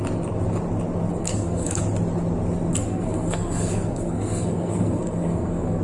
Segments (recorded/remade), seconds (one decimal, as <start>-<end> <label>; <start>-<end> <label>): 0.0-1.2 recorded; 1.2-1.8 remade; 1.8-2.7 recorded; 2.7-5.8 remade